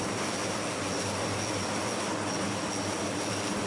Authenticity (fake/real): real